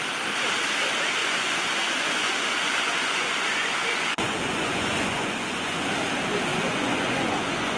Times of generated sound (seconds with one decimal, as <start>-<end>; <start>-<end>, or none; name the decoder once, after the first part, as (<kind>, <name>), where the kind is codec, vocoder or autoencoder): 1.2-5.9 (vocoder, Vocos); 6.5-7.8